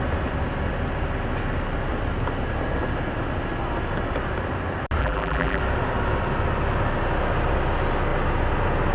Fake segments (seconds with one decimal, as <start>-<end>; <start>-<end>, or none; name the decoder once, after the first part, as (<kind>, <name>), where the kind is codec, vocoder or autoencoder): 5.0-5.6 (vocoder, BigVGAN v2)